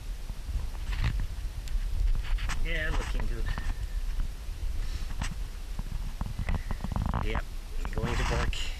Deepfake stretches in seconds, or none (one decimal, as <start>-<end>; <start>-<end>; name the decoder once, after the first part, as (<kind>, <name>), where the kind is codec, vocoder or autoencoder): none